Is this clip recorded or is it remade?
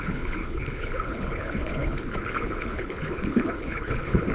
remade